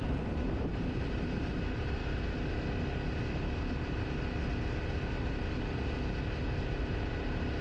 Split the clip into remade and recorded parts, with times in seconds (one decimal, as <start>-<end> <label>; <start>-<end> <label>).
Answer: 0.0-2.0 remade; 2.0-6.6 recorded; 6.6-7.6 remade